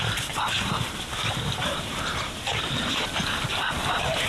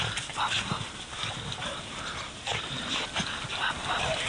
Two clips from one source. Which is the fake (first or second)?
first